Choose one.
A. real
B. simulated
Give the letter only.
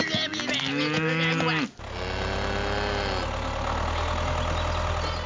A